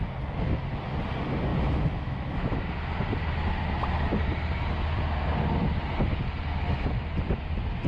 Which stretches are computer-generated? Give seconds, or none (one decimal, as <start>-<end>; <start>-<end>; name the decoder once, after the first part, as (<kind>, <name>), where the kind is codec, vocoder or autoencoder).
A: 1.5-2.7 (autoencoder, DAC-VAE)